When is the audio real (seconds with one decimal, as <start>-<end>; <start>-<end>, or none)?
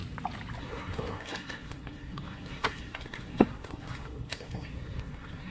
0.0-0.6